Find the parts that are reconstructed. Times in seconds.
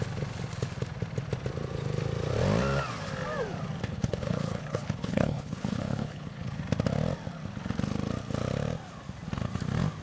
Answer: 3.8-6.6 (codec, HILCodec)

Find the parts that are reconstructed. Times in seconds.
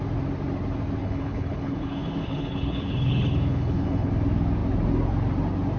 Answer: 1.0-4.1 (codec, HILCodec)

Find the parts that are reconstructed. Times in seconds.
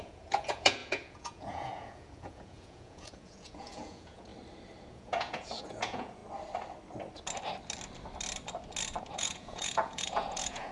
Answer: 0.0-4.3 (vocoder, Vocos); 4.9-6.2; 9.0-10.7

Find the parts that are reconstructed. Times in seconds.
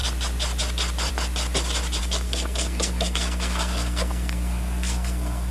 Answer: 2.0-5.5 (codec, SNAC)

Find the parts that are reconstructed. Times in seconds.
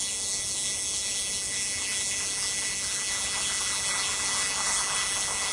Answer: none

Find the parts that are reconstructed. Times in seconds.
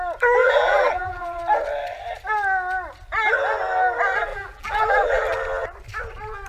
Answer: 0.4-1.4 (vocoder, BigVGAN v2); 4.3-5.2